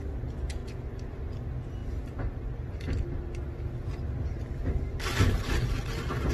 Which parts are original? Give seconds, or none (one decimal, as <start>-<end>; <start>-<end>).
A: 0.0-6.3